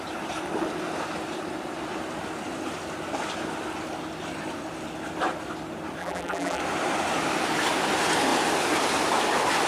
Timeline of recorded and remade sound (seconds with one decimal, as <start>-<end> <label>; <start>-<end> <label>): 0.0-6.0 recorded; 6.0-6.6 remade; 6.6-9.7 recorded